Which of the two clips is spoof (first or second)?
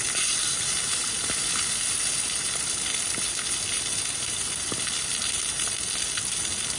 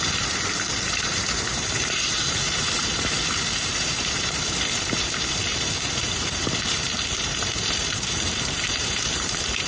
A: second